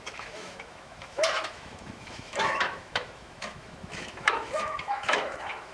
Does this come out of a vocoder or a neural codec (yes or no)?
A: yes